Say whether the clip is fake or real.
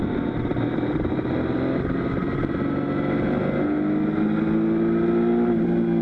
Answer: real